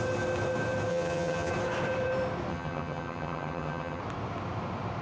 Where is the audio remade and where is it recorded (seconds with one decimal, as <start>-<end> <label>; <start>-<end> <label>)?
0.0-0.9 recorded; 0.9-1.5 remade; 1.5-2.5 recorded; 2.5-4.0 remade; 4.0-5.0 recorded